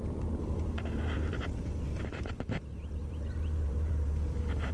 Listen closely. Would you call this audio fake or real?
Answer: fake